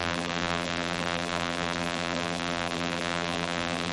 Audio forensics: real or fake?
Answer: fake